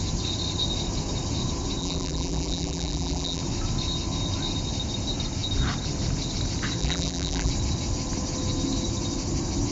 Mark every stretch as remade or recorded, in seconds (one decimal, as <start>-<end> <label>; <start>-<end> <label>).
0.0-1.8 recorded; 1.8-3.4 remade; 3.4-6.8 recorded; 6.8-7.5 remade; 7.5-9.7 recorded